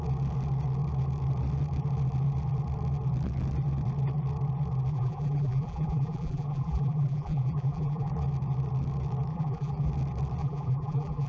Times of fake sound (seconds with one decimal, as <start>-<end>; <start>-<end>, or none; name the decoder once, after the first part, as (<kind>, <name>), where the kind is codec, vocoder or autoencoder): 4.9-8.1 (vocoder, BigVGAN v2); 9.3-9.9; 10.4-11.3